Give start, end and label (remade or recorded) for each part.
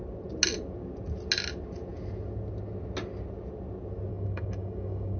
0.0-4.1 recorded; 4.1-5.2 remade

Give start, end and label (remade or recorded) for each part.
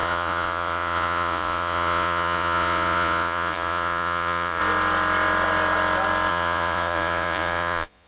0.0-4.6 remade; 4.6-6.3 recorded; 6.3-8.1 remade